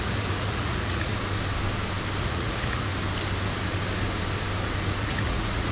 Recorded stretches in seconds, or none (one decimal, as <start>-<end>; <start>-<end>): 1.1-2.2; 2.9-5.0